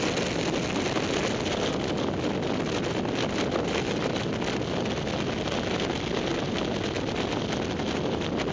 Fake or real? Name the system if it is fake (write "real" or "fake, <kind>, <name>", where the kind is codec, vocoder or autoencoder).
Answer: real